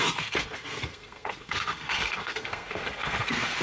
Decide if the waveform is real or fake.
fake